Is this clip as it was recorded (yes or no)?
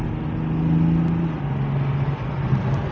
yes